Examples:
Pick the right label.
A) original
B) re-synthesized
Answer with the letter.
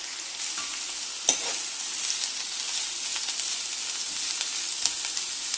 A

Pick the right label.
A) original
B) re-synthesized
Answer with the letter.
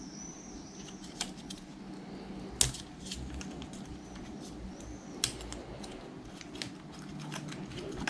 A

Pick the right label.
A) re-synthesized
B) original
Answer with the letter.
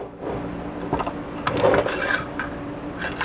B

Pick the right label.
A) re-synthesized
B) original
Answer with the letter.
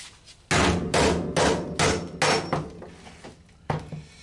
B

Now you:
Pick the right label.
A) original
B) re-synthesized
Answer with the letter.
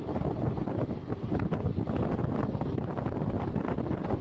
A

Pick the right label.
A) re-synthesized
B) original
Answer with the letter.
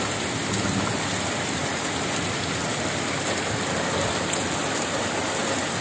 B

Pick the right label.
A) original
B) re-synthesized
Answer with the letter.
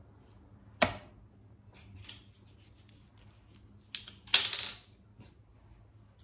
A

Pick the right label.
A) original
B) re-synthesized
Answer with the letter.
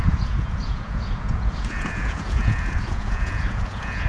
B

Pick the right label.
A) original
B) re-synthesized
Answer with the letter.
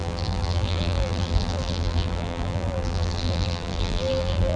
B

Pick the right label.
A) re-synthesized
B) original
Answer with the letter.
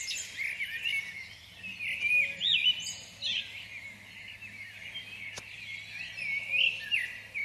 B